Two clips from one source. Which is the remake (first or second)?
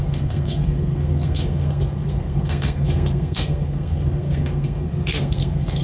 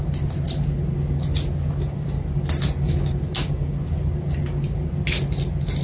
first